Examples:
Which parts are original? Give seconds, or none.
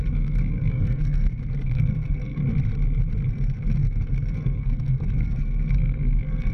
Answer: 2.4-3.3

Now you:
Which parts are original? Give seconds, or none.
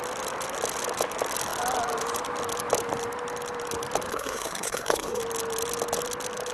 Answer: 0.0-4.1; 5.2-6.5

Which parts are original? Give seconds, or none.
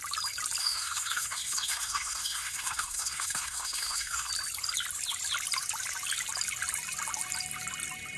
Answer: 0.0-0.6; 4.3-8.2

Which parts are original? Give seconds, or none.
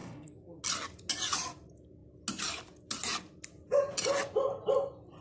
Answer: 0.6-5.2